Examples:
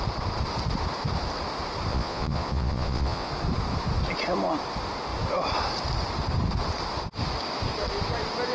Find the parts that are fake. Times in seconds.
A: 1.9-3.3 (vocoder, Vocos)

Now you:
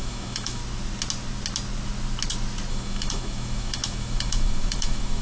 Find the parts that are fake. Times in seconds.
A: 0.0-0.6 (autoencoder, DAC-VAE); 2.7-5.2